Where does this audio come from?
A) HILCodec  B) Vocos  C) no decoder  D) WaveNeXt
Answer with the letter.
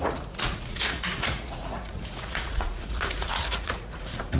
B